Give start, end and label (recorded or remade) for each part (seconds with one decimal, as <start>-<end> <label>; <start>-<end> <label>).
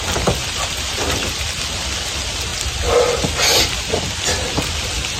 0.0-5.2 recorded